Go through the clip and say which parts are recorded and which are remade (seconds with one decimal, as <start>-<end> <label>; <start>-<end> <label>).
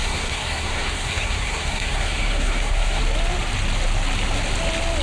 0.0-3.0 remade; 3.0-5.0 recorded